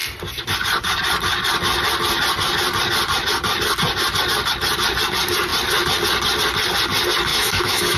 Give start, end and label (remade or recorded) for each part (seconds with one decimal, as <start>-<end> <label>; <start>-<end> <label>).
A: 0.0-7.3 recorded; 7.3-8.0 remade